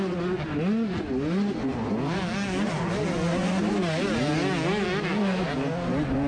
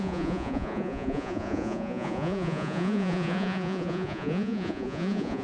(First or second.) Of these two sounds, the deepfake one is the second